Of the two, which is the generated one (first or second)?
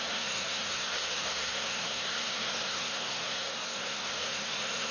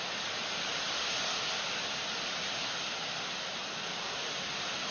first